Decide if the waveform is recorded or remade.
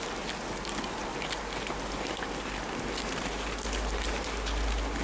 recorded